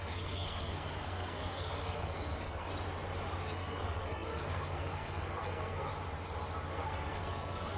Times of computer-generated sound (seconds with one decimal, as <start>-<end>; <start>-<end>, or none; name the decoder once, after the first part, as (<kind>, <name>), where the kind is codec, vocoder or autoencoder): 0.0-2.7 (codec, SNAC); 3.4-5.9; 6.7-7.8